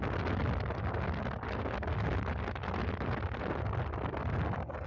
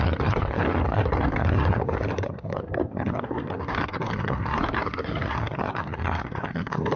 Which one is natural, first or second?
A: first